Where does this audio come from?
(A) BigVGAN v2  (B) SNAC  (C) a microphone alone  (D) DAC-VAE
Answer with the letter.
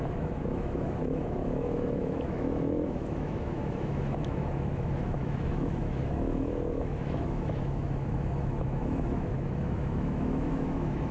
D